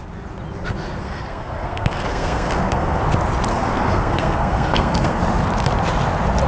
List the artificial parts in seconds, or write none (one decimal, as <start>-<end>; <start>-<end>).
1.0-3.0; 3.5-5.2